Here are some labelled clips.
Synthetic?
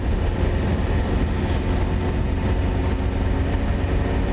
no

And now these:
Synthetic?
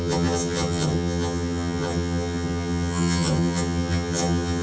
yes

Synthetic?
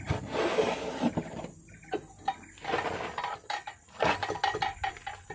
no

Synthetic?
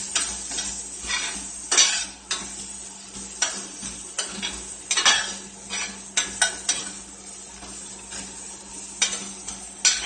no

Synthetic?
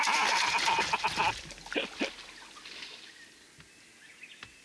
no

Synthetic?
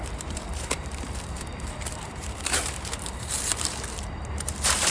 yes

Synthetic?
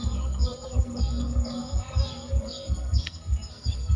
yes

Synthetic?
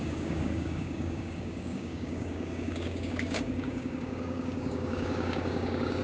yes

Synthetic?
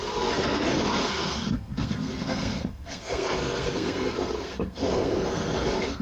yes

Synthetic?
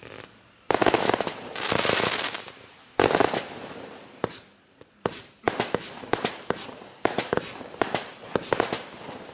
no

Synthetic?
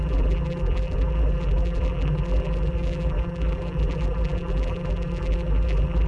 yes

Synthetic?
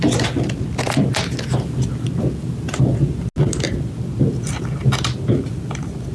no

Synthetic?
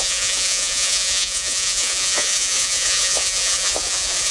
yes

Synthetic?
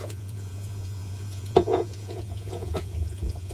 yes